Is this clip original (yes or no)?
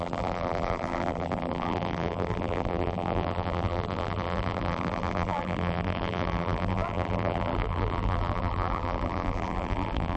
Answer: no